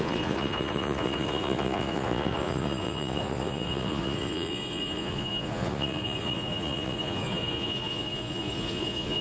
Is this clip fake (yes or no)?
yes